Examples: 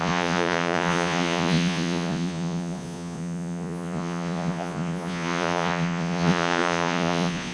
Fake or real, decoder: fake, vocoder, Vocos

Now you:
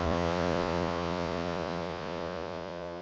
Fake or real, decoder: fake, vocoder, Vocos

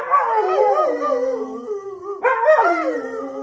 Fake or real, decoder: real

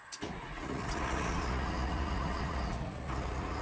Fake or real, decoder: fake, vocoder, Vocos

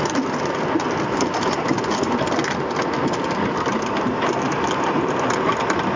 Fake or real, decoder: real